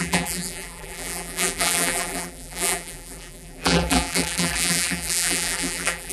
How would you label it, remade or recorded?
remade